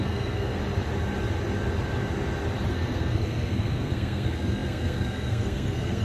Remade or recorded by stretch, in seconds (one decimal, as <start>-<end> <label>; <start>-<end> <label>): 0.0-0.6 remade; 0.6-2.7 recorded; 2.7-6.0 remade